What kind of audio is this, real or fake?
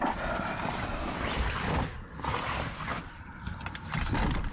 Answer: real